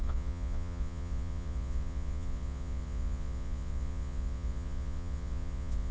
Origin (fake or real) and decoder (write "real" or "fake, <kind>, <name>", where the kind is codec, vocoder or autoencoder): fake, vocoder, Vocos